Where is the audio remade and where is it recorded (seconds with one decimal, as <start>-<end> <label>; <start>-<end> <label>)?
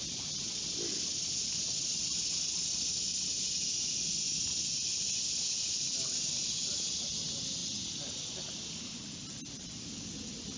0.0-10.6 recorded